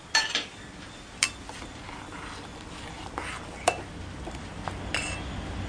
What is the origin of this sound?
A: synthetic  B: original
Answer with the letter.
B